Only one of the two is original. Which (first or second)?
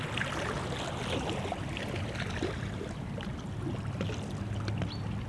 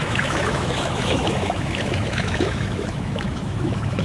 first